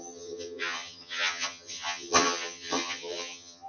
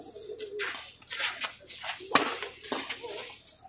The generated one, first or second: first